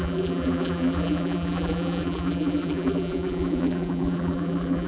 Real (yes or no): no